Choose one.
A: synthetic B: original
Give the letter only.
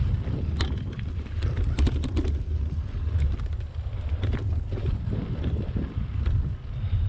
A